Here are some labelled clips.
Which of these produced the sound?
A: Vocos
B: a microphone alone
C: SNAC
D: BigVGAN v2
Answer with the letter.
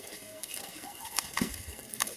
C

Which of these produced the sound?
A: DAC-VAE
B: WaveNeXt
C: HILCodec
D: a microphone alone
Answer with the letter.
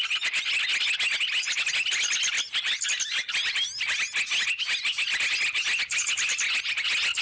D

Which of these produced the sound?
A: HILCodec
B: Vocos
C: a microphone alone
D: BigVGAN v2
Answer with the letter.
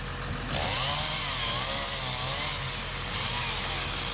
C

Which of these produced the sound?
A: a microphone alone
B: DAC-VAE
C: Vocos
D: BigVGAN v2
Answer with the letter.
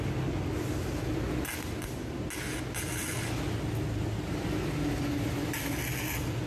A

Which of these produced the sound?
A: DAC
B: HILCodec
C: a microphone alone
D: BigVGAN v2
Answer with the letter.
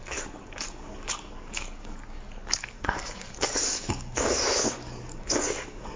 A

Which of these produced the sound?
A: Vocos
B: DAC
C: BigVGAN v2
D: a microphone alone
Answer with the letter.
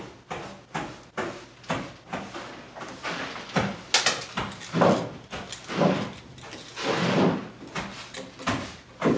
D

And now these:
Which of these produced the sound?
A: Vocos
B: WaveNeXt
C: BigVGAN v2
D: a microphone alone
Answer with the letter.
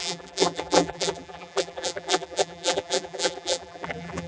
C